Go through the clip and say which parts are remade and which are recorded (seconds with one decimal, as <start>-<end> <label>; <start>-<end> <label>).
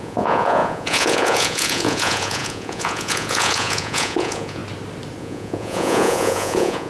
0.0-4.6 remade; 4.6-5.2 recorded; 5.2-6.9 remade